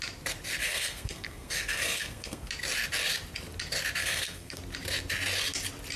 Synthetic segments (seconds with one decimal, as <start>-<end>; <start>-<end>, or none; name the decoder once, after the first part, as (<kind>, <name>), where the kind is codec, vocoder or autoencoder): 0.6-2.5 (codec, SNAC); 4.0-4.6